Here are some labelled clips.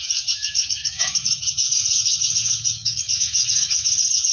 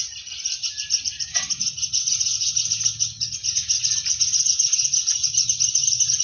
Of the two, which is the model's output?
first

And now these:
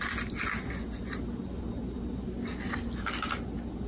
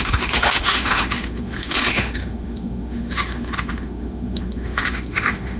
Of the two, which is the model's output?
second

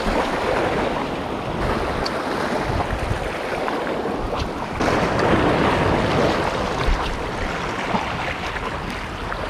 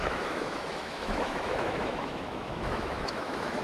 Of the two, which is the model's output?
second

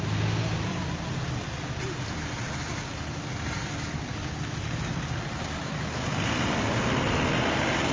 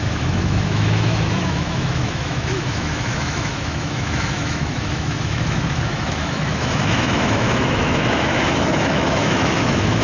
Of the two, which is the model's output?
second